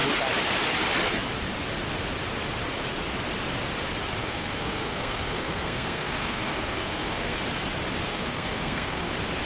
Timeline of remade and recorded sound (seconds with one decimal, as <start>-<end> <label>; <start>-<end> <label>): 0.0-4.2 recorded; 4.2-7.4 remade; 7.4-8.1 recorded; 8.1-9.1 remade; 9.1-9.5 recorded